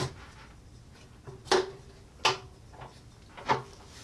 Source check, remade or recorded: recorded